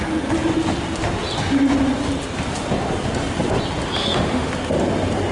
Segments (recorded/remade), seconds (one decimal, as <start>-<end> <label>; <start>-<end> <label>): 0.0-4.0 recorded; 4.0-4.5 remade; 4.5-5.3 recorded